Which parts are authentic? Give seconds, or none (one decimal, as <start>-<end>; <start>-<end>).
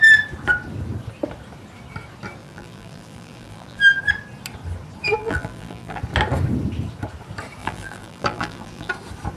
0.0-2.4; 4.0-5.2; 6.0-7.6; 8.9-9.4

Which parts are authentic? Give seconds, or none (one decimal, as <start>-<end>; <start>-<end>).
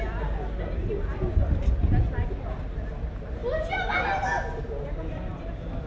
0.0-5.9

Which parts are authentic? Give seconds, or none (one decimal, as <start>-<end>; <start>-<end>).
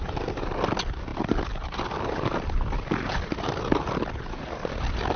0.0-5.2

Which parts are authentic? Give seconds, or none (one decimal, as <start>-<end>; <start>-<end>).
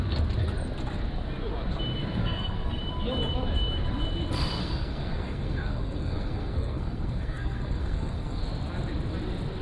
0.0-2.2; 2.8-4.6; 8.4-9.6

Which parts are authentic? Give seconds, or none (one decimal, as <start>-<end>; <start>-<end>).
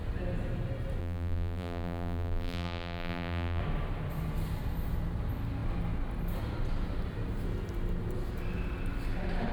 0.0-1.0; 3.6-9.5